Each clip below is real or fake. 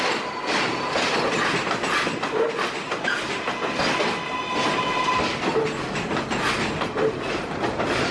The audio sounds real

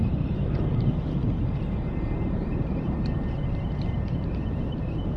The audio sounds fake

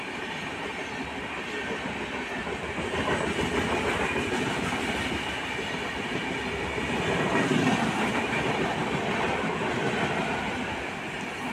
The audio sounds real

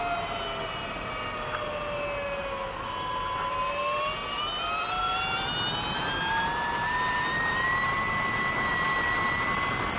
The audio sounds real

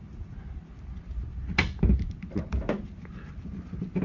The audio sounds real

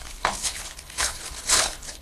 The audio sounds fake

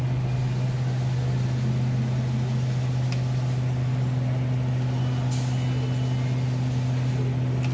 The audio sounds real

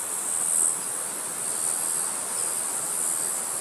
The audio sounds real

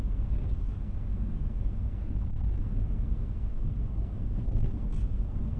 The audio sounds fake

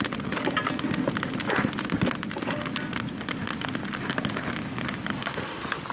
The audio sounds real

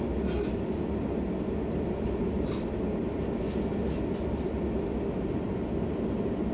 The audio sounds real